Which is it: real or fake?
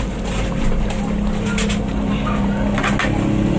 real